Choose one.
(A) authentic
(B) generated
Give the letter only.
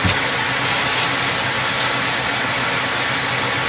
A